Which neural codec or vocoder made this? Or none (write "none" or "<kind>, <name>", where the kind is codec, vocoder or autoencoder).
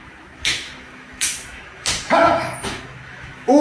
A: autoencoder, DAC-VAE